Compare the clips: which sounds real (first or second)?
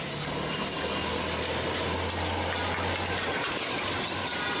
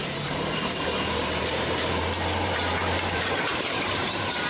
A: first